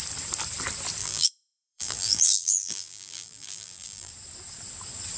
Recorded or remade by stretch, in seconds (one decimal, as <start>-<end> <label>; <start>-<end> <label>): 0.0-1.0 recorded; 1.0-4.1 remade; 4.1-5.2 recorded